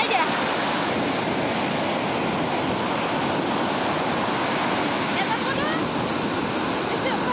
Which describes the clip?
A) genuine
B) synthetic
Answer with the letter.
A